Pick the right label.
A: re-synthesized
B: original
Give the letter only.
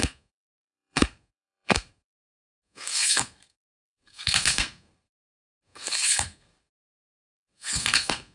A